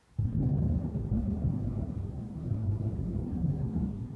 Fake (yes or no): yes